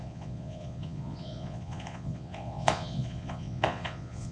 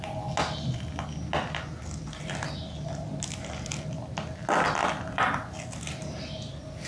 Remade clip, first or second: first